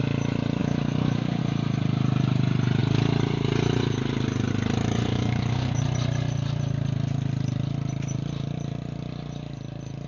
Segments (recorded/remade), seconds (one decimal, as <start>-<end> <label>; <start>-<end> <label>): 0.0-0.6 recorded; 0.6-1.4 remade; 1.4-5.1 recorded; 5.1-5.8 remade; 5.8-10.1 recorded